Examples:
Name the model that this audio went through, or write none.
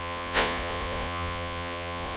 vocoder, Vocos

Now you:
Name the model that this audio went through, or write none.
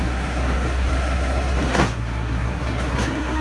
codec, SNAC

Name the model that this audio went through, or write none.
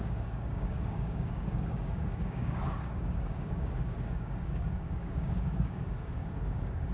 codec, DAC